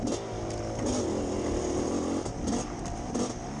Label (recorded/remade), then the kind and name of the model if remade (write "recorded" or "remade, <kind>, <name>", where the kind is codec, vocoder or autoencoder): recorded